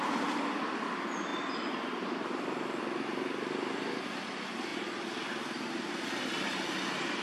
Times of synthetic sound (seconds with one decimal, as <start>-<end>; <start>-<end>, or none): none